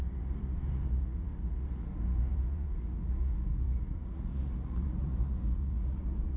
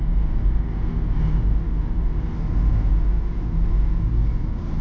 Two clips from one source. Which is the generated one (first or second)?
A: first